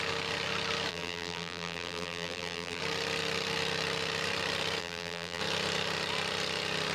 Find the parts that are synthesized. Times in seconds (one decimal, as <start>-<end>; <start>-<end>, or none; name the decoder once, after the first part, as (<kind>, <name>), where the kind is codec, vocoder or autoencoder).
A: 0.9-2.8 (vocoder, BigVGAN v2); 4.8-5.4